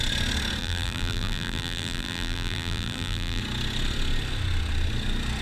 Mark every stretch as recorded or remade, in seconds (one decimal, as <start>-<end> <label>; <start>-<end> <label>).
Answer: 0.0-0.6 recorded; 0.6-3.4 remade; 3.4-5.4 recorded